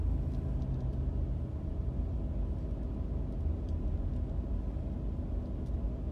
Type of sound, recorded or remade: recorded